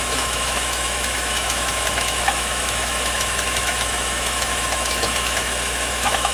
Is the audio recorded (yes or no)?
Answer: no